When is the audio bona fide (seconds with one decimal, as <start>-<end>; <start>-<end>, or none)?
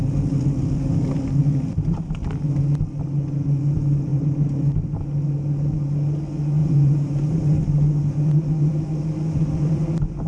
0.0-4.1; 5.0-6.6; 7.6-10.3